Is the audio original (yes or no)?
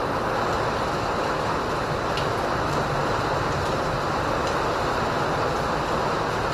yes